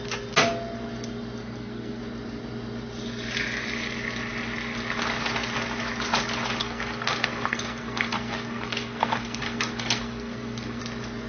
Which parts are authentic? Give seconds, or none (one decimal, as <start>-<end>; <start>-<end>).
0.0-1.4; 2.0-6.6; 10.8-11.3